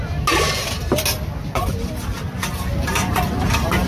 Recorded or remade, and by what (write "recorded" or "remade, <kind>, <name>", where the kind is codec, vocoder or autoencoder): recorded